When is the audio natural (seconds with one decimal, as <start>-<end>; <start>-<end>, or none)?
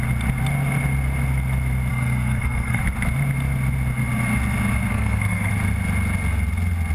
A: 0.0-1.9; 2.8-4.9; 5.5-6.9